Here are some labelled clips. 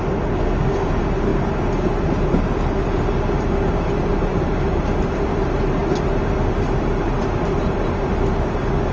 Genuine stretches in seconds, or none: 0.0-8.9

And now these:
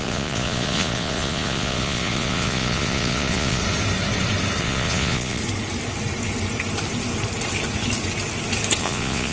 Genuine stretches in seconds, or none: 3.6-4.6; 5.4-8.8